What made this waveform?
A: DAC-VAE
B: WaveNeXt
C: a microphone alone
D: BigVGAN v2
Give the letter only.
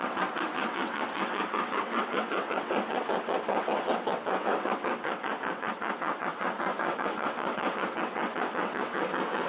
B